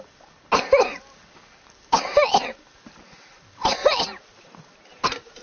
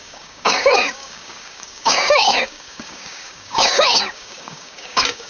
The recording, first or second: first